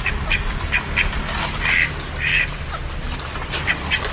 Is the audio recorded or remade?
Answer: recorded